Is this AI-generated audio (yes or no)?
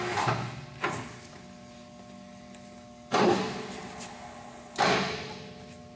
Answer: no